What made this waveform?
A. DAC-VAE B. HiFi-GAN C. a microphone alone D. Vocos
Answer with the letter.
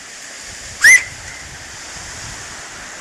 C